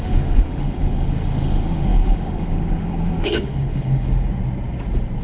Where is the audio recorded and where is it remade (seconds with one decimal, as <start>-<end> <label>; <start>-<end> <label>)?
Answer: 0.0-4.4 remade; 4.4-5.2 recorded